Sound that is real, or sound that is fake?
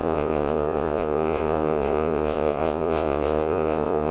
fake